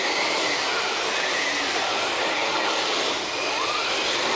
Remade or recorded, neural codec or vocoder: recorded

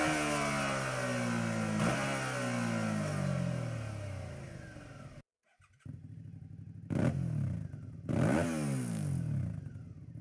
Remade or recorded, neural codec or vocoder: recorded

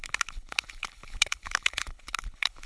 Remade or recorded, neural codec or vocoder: remade, codec, HILCodec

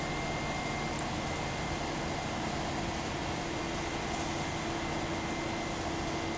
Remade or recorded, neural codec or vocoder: recorded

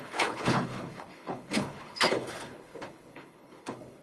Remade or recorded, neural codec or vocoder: remade, codec, HILCodec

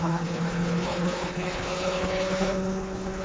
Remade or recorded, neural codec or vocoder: remade, codec, HILCodec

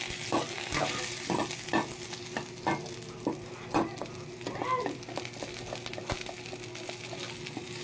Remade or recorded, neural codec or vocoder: recorded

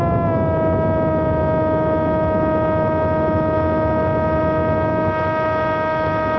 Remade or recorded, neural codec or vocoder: recorded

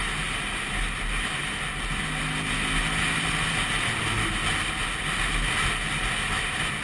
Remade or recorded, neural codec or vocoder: recorded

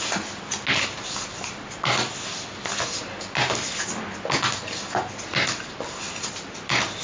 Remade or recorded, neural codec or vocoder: recorded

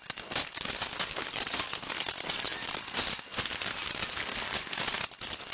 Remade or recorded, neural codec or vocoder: recorded